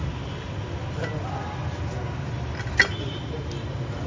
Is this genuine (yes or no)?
yes